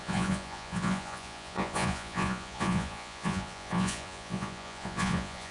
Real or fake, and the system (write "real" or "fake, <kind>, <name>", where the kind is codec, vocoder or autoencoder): fake, vocoder, Vocos